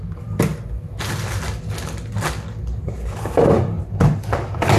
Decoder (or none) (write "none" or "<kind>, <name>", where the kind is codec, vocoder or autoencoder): none